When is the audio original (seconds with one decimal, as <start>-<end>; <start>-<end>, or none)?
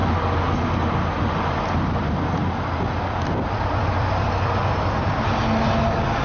0.0-6.2